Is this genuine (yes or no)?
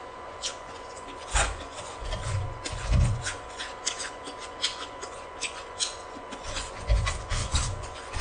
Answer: no